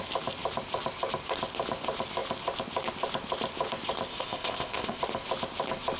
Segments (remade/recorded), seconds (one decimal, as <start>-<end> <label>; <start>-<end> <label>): 0.0-4.1 recorded; 4.1-5.0 remade; 5.0-6.0 recorded